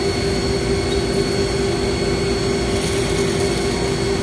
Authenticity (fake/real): real